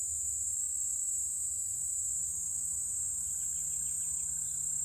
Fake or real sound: real